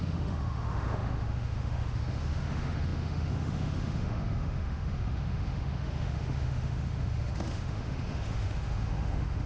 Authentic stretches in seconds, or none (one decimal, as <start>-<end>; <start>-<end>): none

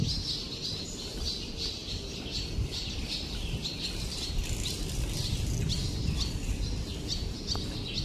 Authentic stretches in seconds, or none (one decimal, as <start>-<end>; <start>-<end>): 0.0-1.8; 6.3-8.0

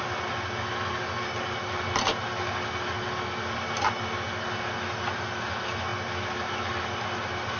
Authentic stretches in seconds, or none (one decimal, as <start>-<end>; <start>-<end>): 0.0-7.6

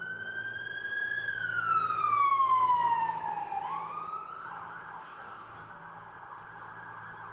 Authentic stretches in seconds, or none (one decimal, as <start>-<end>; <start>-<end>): 0.0-5.0; 5.7-7.3